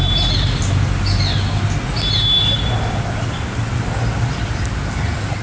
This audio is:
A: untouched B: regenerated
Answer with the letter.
A